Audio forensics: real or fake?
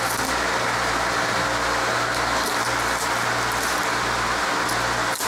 real